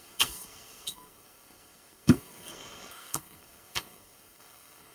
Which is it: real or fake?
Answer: fake